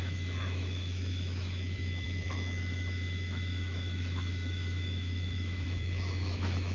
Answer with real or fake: fake